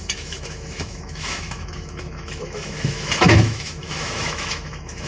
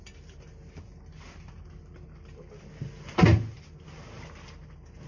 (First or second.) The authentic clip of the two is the second